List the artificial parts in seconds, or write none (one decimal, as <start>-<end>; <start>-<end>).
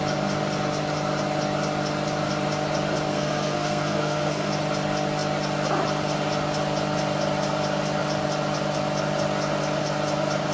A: 3.1-4.5